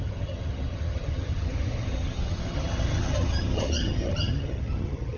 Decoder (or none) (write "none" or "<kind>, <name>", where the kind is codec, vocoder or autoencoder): vocoder, HiFi-GAN